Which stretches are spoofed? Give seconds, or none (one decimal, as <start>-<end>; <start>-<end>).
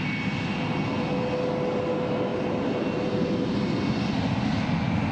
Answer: none